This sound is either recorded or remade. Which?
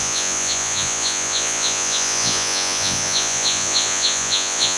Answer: remade